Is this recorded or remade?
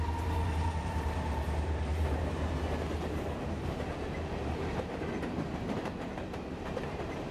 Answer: remade